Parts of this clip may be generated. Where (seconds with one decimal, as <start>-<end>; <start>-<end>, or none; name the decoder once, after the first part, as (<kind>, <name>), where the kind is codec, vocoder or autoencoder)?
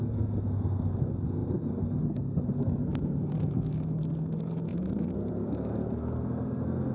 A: 0.0-6.9 (codec, SNAC)